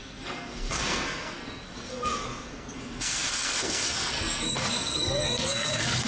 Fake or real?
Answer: fake